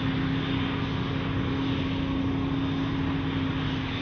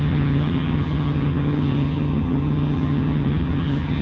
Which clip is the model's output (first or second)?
second